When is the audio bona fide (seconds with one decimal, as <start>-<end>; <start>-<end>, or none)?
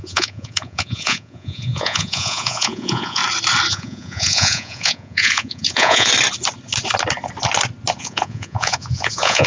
3.2-3.7; 6.1-8.0